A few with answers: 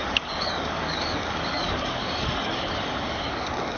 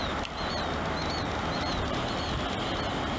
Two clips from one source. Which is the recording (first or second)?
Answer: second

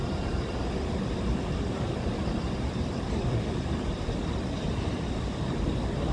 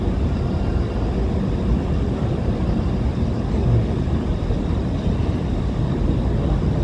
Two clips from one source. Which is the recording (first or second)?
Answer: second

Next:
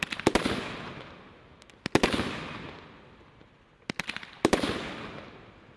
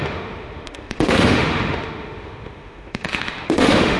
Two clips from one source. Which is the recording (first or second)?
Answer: first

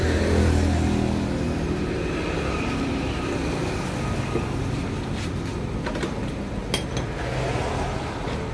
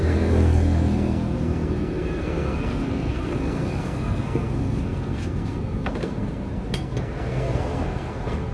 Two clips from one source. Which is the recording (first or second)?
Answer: first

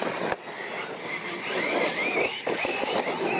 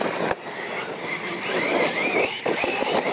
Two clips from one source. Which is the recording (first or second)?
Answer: first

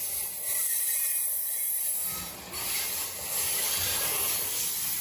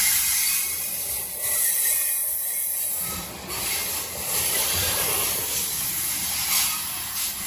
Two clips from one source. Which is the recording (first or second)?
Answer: first